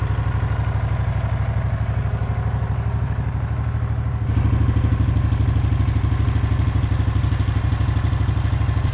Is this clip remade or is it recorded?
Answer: recorded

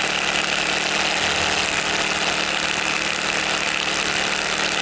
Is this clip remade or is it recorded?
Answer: recorded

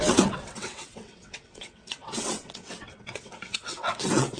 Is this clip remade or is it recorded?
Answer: remade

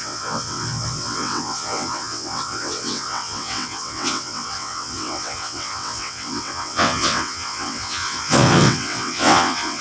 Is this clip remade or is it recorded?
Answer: remade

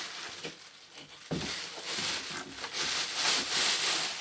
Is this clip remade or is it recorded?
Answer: recorded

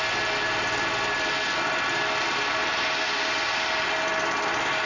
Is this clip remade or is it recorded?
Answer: recorded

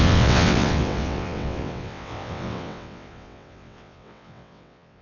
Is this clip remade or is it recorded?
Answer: remade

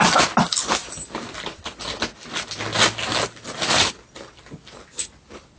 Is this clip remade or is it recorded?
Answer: recorded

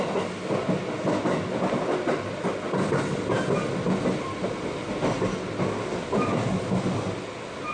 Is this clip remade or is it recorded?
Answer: recorded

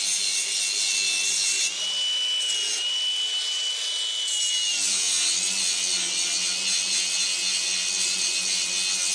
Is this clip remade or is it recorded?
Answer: recorded